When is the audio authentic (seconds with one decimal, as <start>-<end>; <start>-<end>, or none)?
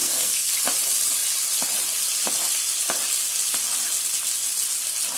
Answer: 0.5-5.2